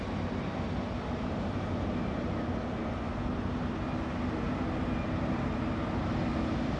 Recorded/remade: recorded